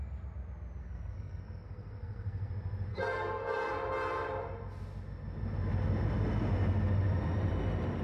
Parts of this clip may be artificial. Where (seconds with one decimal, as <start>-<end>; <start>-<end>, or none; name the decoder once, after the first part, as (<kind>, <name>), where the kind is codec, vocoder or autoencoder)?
0.8-2.5 (codec, SNAC); 2.9-3.7